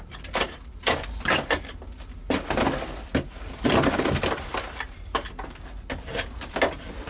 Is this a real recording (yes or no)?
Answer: yes